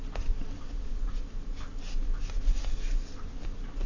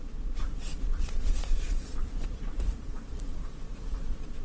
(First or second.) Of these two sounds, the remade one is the second